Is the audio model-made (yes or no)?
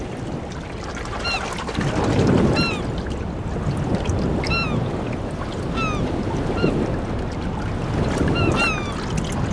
no